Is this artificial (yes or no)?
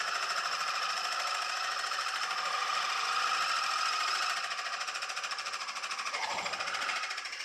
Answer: no